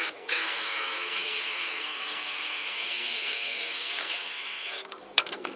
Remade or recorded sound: remade